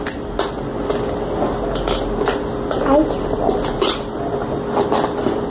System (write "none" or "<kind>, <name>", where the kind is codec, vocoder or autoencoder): none